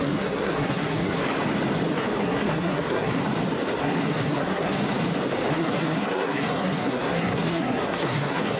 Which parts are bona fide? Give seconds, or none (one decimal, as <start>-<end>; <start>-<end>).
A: 1.2-2.2; 3.2-3.8; 4.8-5.5